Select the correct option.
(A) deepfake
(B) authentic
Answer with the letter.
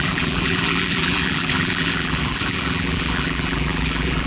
A